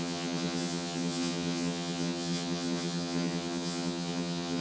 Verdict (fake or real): fake